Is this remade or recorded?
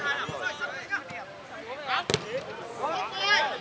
recorded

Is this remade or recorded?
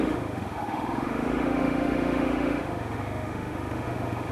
remade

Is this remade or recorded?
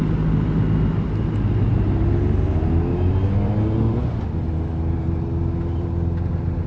recorded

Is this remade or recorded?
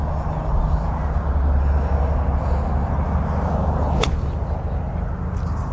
recorded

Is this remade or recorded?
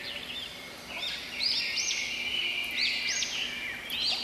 recorded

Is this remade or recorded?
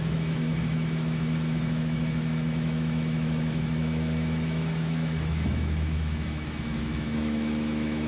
remade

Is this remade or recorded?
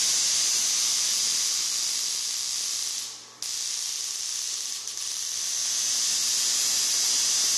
recorded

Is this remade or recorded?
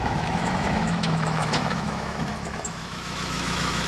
remade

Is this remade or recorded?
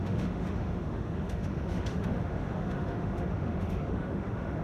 remade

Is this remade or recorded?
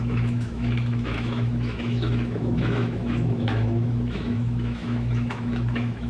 remade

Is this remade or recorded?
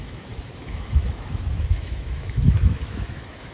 remade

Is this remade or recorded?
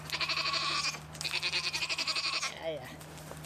recorded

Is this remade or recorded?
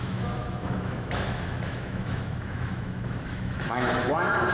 remade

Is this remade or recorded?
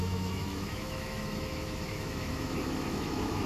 remade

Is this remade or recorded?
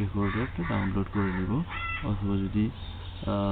recorded